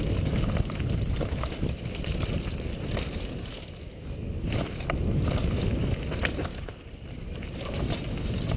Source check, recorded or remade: recorded